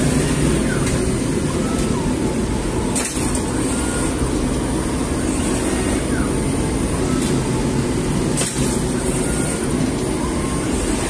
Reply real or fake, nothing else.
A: real